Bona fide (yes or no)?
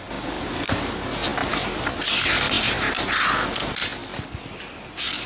yes